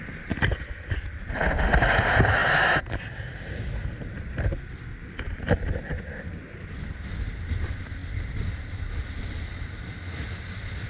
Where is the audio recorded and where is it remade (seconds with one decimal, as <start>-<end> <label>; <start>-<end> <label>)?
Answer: 0.0-10.9 recorded